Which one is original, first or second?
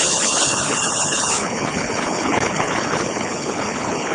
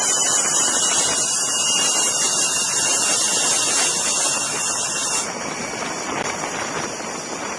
second